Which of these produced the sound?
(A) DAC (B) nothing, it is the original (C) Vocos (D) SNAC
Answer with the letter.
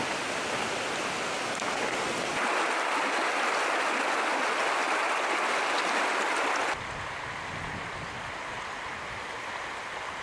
B